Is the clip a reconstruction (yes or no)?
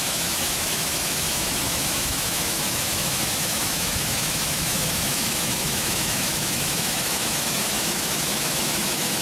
yes